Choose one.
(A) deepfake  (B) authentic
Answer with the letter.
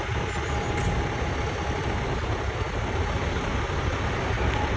B